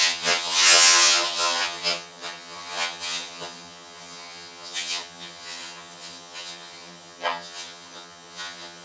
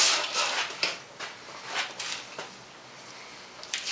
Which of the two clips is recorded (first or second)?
second